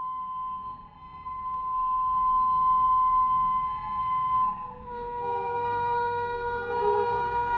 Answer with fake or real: fake